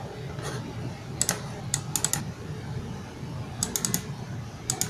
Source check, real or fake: real